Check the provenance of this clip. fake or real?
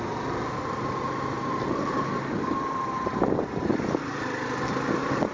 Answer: real